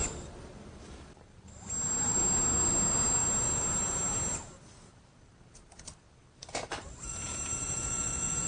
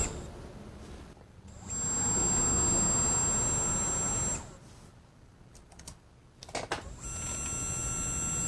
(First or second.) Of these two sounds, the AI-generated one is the first